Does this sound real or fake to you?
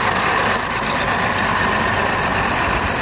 real